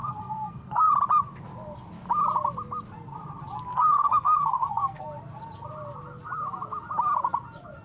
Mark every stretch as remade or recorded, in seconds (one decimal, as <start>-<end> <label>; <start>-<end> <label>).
0.0-0.9 remade; 0.9-3.7 recorded; 3.7-5.0 remade; 5.0-7.8 recorded